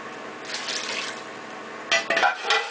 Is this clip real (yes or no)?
yes